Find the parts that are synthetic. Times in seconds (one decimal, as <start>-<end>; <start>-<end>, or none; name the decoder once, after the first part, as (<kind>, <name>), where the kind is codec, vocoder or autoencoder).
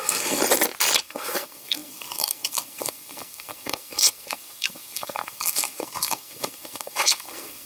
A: 0.0-0.4 (codec, SNAC); 1.0-7.7